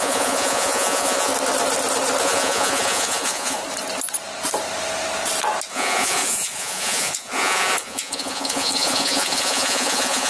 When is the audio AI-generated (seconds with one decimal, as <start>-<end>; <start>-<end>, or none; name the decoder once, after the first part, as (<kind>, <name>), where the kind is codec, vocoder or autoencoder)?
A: 0.0-1.3 (vocoder, Vocos); 2.2-3.6; 5.7-10.3